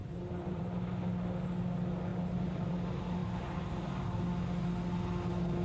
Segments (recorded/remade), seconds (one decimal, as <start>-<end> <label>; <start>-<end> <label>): 0.0-0.6 remade; 0.6-3.2 recorded; 3.2-4.2 remade; 4.2-5.6 recorded